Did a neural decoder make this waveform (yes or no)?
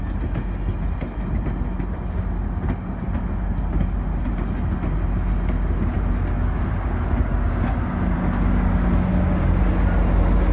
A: no